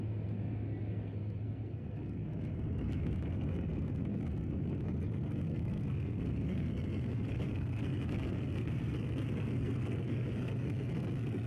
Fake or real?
fake